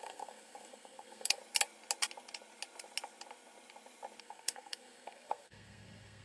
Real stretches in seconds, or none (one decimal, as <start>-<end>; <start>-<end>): 1.4-4.2